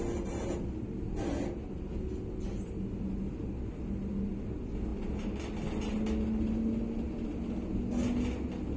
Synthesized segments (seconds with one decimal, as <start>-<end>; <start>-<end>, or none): none